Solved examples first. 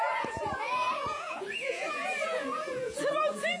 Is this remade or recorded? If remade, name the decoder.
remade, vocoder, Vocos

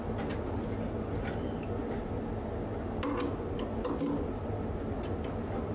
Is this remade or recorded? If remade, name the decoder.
recorded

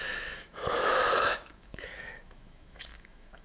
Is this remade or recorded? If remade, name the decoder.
remade, autoencoder, DAC-VAE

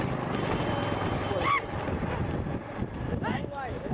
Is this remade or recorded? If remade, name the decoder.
recorded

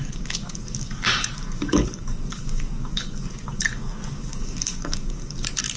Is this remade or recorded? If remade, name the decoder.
remade, codec, DAC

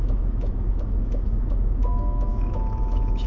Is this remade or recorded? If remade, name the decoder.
remade, autoencoder, DAC-VAE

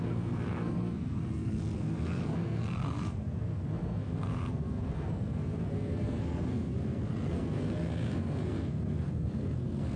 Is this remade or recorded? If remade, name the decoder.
remade, codec, SNAC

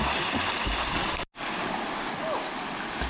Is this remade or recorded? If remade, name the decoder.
recorded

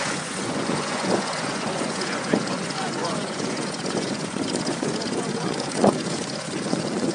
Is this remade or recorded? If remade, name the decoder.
remade, vocoder, Vocos